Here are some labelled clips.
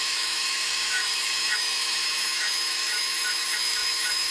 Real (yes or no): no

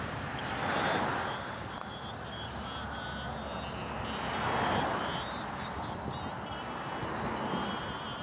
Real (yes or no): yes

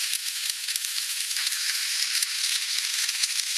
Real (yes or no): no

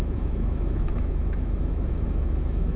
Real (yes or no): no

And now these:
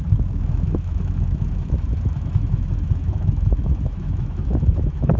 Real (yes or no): no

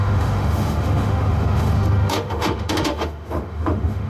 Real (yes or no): no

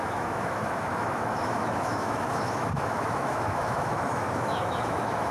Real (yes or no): no